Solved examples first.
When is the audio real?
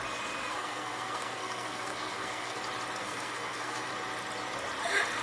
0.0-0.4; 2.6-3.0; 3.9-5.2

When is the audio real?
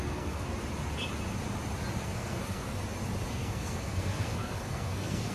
0.5-2.0; 2.7-3.3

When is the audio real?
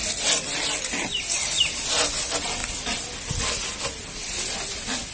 0.0-5.1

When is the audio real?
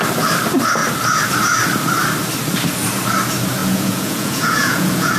0.0-3.6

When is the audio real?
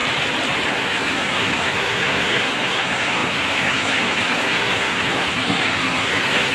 0.0-0.7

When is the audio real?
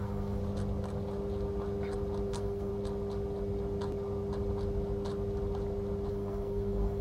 0.4-2.3; 2.7-6.1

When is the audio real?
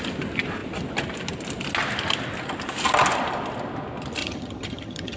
0.0-4.2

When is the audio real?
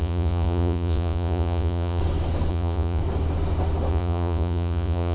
2.0-2.5; 3.0-3.9